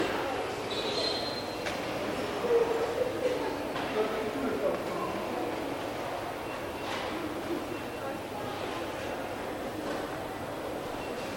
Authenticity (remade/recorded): recorded